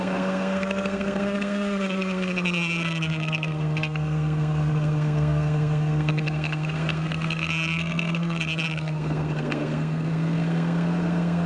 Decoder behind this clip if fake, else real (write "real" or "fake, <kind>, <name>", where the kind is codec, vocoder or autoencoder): fake, codec, SNAC